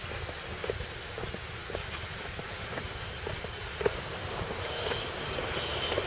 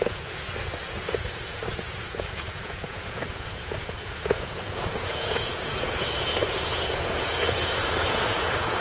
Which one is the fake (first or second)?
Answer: second